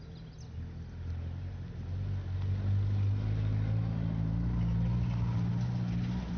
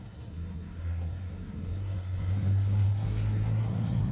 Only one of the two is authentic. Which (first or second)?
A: first